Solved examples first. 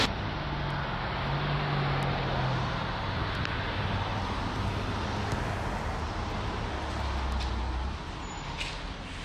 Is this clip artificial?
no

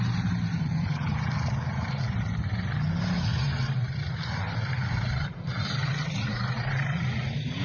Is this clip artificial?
yes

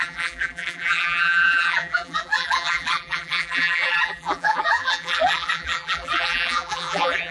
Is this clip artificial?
yes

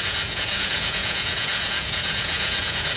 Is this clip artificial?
yes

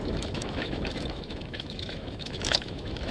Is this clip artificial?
yes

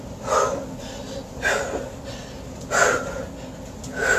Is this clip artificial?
no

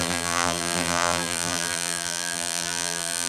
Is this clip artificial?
yes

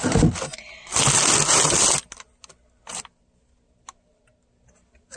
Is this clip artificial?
no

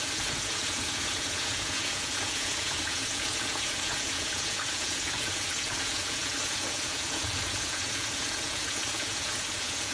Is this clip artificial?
yes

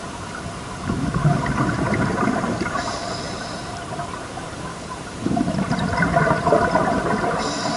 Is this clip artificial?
yes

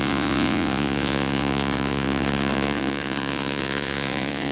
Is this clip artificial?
yes